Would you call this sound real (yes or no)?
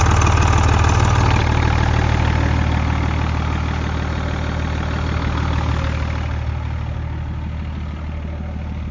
yes